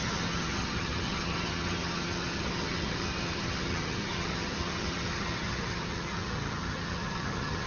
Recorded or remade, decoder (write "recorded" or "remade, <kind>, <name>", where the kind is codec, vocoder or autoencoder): remade, vocoder, HiFi-GAN